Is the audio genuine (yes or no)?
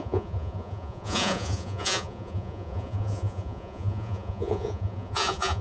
no